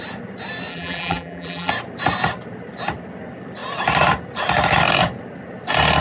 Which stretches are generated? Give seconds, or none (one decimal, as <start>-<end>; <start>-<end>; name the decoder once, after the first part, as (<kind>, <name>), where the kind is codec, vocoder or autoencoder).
0.7-1.7 (vocoder, BigVGAN v2)